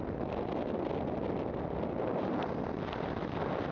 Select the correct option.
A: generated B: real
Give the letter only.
B